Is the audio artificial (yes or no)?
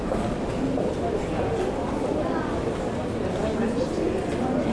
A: no